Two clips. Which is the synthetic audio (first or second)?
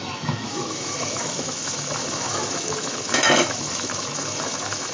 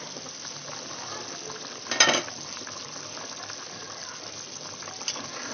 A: first